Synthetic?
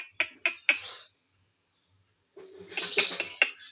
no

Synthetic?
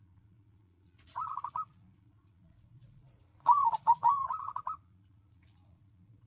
yes